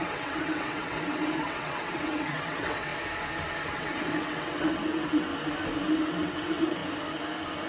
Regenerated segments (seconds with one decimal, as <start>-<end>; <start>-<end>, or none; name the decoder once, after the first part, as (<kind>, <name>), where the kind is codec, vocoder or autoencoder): 0.0-2.9 (vocoder, WaveNeXt); 3.7-5.3; 5.9-6.8